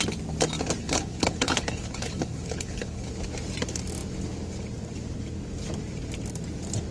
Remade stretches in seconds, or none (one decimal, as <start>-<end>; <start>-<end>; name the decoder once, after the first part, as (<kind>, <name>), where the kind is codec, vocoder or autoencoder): 0.8-3.1 (codec, HILCodec)